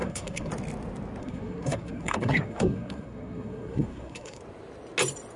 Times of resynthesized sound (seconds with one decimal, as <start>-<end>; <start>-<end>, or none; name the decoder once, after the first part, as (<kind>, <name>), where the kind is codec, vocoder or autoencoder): 0.0-0.5 (codec, SNAC); 1.2-4.4